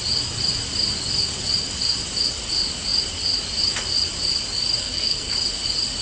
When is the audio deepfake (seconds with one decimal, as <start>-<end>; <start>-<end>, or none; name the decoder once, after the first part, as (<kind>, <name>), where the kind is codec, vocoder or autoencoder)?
4.8-5.3 (codec, SNAC)